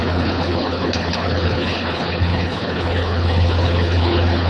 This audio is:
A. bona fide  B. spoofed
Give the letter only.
B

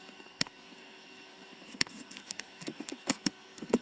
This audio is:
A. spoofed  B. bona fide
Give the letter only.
A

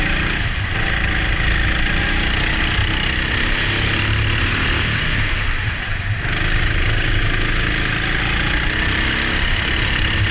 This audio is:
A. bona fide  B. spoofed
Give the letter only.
A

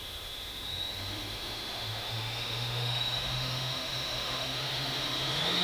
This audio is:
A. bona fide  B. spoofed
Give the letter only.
B